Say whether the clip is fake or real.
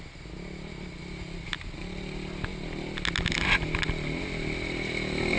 real